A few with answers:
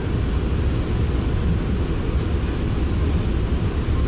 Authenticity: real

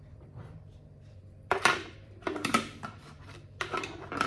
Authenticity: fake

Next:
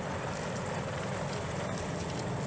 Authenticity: real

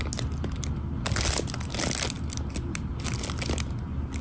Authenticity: real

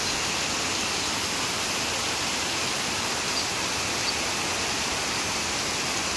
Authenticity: real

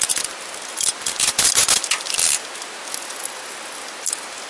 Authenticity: real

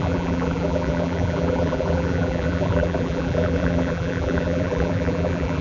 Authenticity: fake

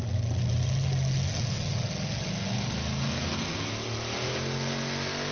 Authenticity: real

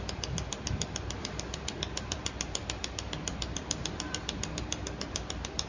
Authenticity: fake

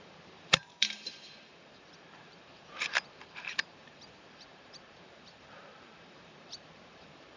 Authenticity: fake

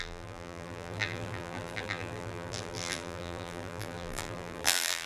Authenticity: fake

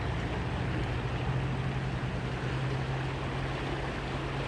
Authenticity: real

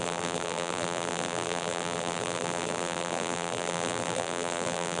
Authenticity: fake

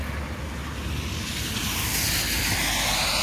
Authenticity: real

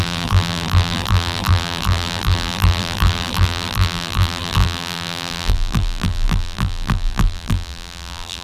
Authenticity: fake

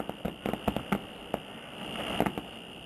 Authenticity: real